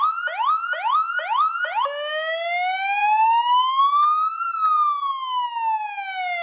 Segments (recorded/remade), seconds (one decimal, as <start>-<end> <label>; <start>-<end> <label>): 0.0-6.4 recorded